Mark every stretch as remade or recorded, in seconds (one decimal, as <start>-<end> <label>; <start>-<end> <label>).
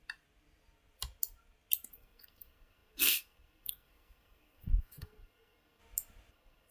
0.0-1.9 recorded; 1.9-5.8 remade; 5.8-6.3 recorded; 6.3-6.7 remade